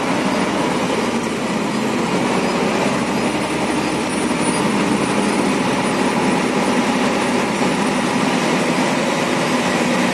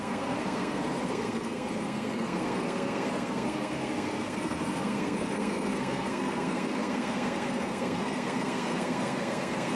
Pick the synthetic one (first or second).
second